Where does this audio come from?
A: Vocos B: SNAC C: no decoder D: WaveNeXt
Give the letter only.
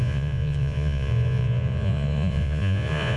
A